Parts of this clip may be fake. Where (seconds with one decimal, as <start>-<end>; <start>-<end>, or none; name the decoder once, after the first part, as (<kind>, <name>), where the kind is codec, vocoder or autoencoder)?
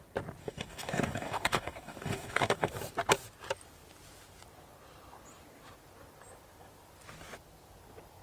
0.4-2.7 (codec, DAC)